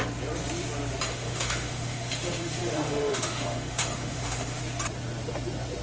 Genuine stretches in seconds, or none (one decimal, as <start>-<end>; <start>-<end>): 0.0-1.1; 4.6-5.8